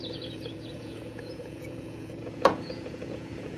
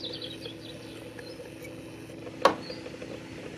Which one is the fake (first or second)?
first